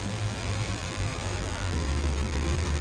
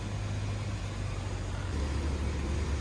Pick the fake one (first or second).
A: first